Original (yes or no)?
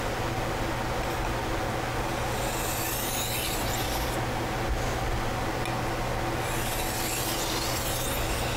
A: yes